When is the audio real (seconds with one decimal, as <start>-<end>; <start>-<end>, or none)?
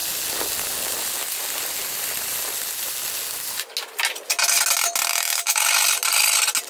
0.0-5.1; 5.6-6.7